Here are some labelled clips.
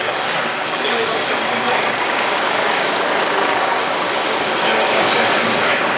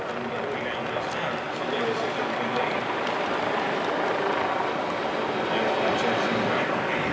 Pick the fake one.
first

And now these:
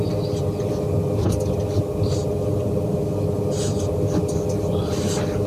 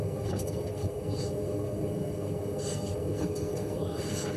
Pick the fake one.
second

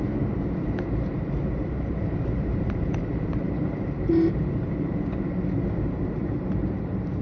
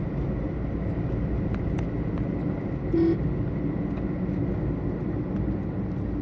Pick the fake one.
first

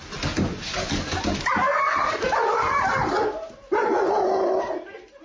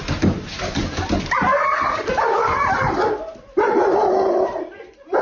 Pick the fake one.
second